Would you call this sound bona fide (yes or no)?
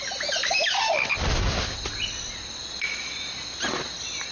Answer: yes